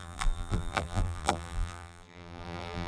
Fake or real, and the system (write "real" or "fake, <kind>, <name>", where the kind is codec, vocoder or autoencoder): fake, vocoder, BigVGAN v2